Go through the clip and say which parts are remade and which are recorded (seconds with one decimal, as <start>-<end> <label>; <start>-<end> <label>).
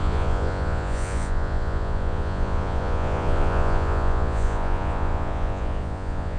0.0-6.4 remade